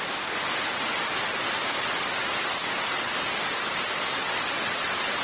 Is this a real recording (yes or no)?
yes